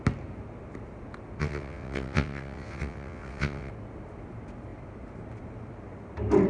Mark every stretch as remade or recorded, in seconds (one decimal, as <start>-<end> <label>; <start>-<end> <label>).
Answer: 0.0-1.4 recorded; 1.4-3.7 remade; 3.7-6.5 recorded